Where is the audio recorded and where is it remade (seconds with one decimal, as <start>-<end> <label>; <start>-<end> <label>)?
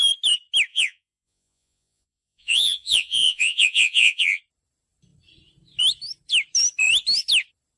0.0-0.7 recorded; 0.7-4.4 remade; 4.4-7.8 recorded